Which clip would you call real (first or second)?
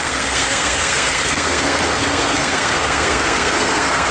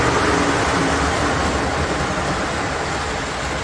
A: second